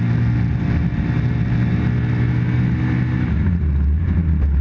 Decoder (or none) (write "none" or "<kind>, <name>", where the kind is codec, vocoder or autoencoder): none